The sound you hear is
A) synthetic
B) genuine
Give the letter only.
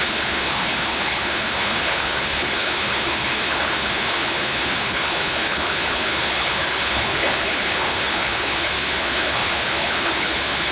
A